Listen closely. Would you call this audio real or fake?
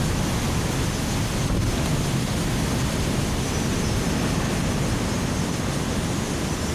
real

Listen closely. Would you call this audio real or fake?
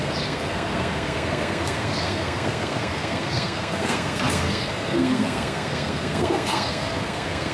fake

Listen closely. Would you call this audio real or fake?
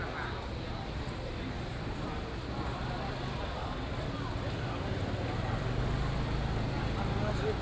real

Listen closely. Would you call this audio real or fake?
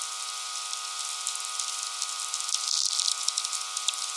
real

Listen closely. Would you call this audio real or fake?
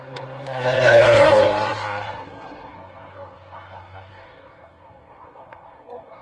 fake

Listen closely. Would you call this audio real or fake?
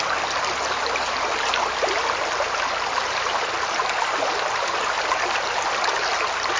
real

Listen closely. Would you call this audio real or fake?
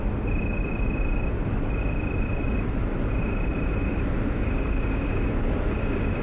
real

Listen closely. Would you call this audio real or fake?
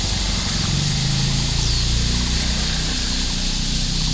real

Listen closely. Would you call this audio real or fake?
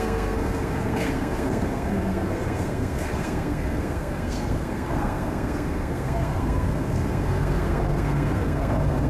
fake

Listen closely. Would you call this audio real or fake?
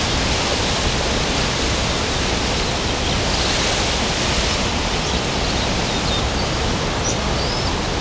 real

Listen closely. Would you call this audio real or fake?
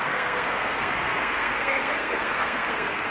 fake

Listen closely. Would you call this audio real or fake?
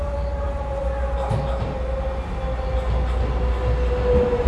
real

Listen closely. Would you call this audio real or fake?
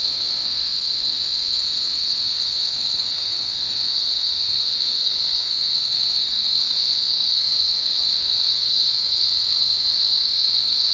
fake